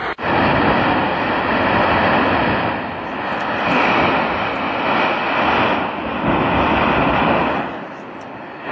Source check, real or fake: real